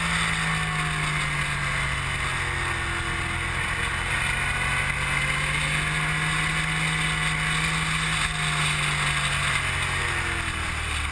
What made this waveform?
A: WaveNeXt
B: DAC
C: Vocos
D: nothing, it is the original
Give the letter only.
D